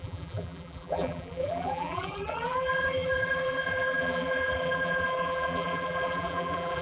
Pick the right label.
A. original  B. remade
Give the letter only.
B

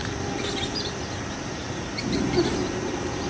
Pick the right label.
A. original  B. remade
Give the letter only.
B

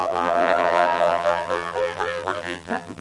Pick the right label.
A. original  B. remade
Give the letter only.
B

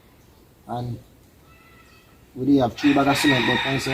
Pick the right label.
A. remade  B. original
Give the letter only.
B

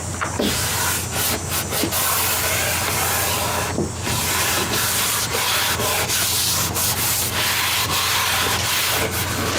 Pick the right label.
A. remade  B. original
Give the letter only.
B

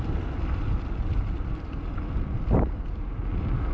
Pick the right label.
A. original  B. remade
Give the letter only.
A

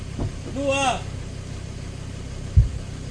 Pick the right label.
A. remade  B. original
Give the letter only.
B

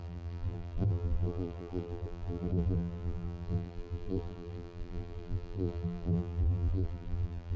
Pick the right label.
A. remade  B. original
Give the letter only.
A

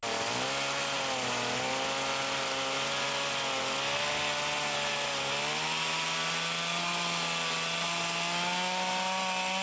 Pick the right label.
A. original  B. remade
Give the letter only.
A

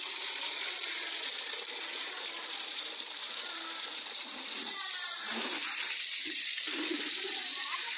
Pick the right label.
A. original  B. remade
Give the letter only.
B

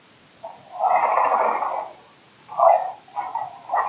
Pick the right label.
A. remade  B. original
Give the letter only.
B